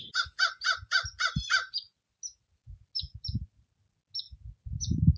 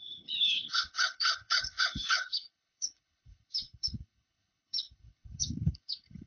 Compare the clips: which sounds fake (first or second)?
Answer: second